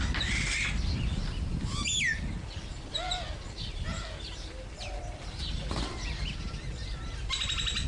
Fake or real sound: real